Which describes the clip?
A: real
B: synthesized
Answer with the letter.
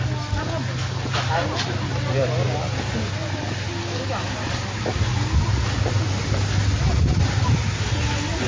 A